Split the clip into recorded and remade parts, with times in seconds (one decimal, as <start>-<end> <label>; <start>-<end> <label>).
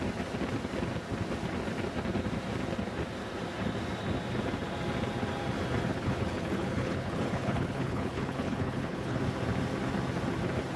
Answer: 0.0-5.9 recorded; 5.9-9.2 remade; 9.2-10.8 recorded